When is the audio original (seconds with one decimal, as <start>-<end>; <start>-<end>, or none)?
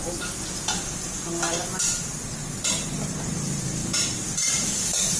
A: 0.0-3.1